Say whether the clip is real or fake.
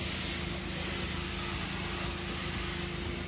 real